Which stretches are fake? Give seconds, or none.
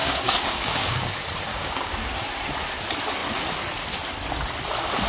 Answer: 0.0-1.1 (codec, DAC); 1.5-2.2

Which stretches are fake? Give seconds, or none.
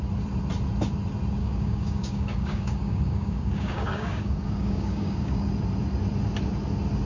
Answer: 1.4-5.5 (codec, DAC)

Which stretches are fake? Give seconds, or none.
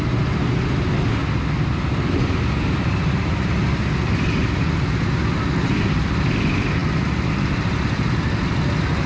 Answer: none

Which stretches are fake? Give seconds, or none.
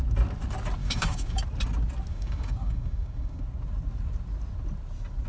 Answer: 0.8-1.4 (codec, DAC); 2.1-3.4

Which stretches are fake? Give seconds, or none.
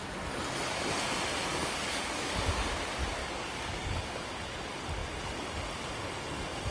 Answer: 1.6-2.4 (codec, DAC); 3.2-4.3